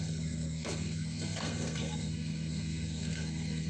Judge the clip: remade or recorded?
remade